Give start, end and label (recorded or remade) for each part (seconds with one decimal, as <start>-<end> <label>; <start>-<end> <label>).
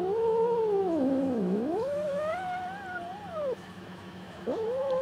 0.0-2.3 remade; 2.3-3.3 recorded; 3.3-5.0 remade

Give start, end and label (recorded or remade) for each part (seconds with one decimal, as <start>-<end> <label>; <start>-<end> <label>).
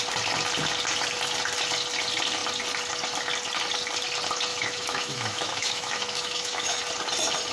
0.0-4.5 recorded; 4.5-6.8 remade; 6.8-7.5 recorded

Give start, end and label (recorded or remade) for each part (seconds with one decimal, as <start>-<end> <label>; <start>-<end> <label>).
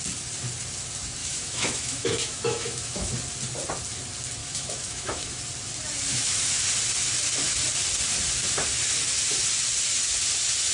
0.0-1.2 recorded; 1.2-3.1 remade; 3.1-4.4 recorded; 4.4-5.4 remade; 5.4-6.1 recorded; 6.1-6.6 remade; 6.6-10.7 recorded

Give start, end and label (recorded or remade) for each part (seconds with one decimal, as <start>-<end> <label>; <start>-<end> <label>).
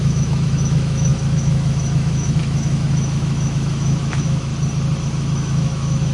0.0-4.5 remade; 4.5-5.0 recorded; 5.0-6.1 remade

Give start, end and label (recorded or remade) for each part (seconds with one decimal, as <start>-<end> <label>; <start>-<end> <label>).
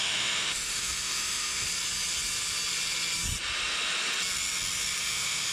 0.0-1.7 remade; 1.7-5.0 recorded; 5.0-5.5 remade